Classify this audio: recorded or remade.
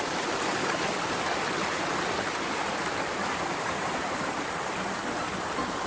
recorded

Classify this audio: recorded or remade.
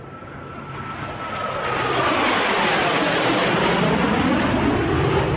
recorded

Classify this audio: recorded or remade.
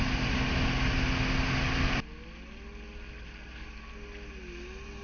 recorded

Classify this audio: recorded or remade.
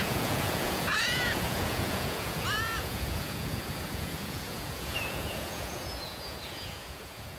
remade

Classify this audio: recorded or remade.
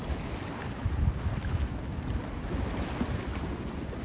recorded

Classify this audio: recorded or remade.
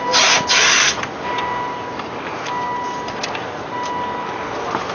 recorded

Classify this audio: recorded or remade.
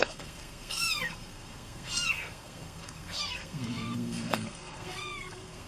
remade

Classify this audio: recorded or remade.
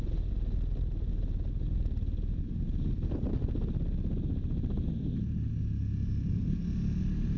recorded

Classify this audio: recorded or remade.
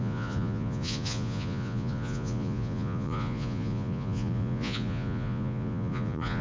remade